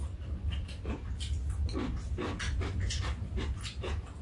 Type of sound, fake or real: real